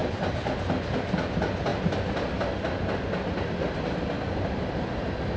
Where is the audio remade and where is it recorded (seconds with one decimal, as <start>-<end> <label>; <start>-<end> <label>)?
0.0-0.5 remade; 0.5-5.4 recorded